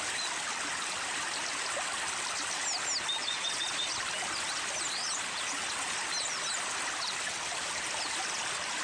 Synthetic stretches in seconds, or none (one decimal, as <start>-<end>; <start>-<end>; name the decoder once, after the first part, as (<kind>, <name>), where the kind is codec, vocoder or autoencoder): 3.2-3.8 (vocoder, Vocos)